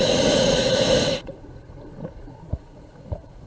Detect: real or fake fake